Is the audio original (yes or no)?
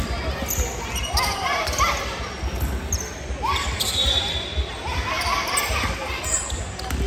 yes